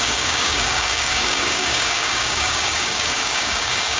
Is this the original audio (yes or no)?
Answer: no